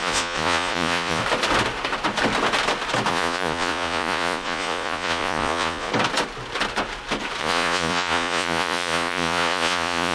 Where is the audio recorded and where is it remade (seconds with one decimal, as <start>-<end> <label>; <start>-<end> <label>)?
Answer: 0.0-1.2 remade; 1.2-3.1 recorded; 3.1-5.9 remade; 5.9-7.4 recorded; 7.4-10.1 remade